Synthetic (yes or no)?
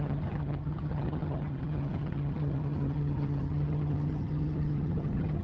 yes